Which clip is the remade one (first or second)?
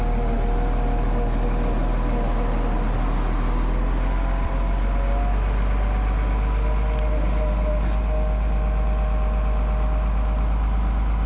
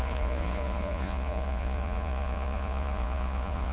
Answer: second